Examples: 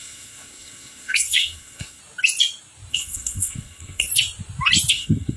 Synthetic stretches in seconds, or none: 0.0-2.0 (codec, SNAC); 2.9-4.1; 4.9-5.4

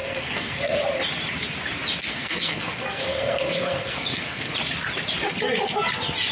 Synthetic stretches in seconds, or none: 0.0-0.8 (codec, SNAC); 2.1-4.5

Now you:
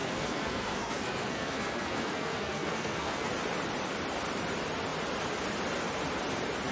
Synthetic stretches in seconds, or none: 0.0-3.3 (codec, SNAC)